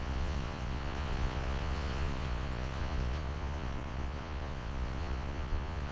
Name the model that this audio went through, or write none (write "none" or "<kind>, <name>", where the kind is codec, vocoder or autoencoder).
vocoder, Vocos